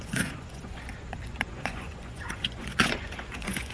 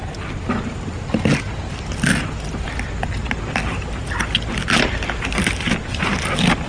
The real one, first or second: second